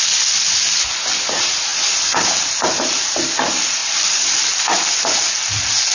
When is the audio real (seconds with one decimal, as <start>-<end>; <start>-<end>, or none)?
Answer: 0.0-5.9